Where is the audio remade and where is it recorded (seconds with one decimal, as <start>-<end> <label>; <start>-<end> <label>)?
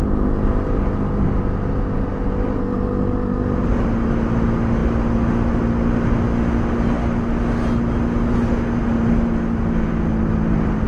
0.0-10.9 recorded